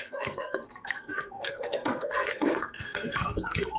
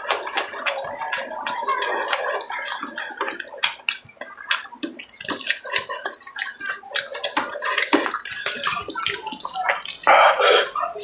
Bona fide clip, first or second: second